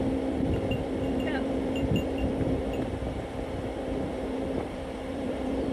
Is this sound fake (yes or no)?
yes